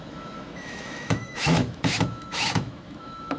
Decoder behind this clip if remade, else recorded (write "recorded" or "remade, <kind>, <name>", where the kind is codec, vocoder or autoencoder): remade, autoencoder, DAC-VAE